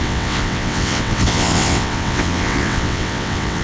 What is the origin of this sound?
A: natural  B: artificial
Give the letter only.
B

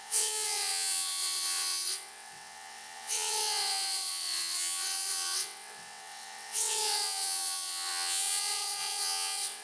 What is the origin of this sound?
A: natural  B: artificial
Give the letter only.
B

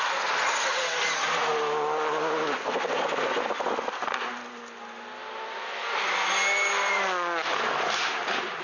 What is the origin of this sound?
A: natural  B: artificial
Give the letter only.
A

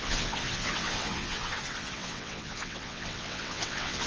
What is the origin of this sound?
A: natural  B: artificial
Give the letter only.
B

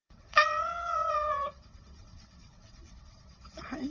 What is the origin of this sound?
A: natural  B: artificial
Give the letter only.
B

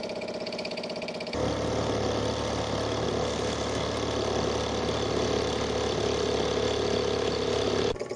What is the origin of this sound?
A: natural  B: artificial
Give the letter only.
A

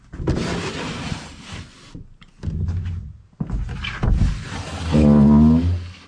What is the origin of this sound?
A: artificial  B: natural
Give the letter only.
B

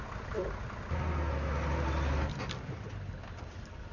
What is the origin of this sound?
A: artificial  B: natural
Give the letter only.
B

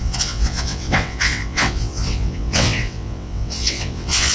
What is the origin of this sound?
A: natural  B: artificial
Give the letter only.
B